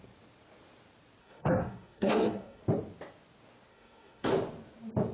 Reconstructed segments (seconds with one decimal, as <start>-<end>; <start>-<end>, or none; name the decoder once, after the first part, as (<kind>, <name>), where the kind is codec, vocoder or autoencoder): 1.2-2.6 (codec, SNAC); 3.7-4.3